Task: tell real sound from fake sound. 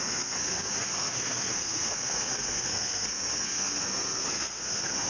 fake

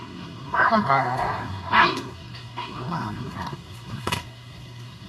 fake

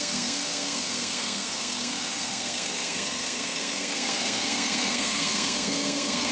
fake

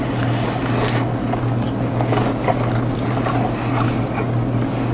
real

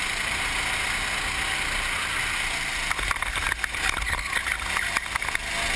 real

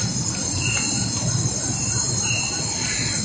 real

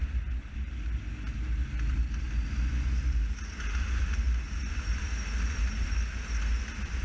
real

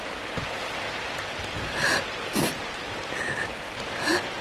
real